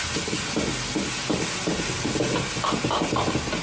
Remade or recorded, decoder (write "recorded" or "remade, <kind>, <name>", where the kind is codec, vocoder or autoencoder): recorded